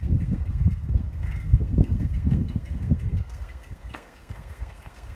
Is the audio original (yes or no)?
no